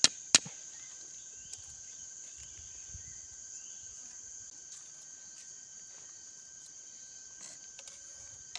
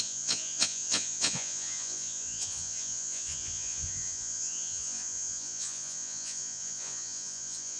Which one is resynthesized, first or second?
second